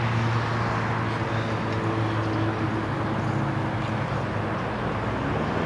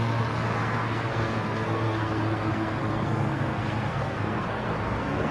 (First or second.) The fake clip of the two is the second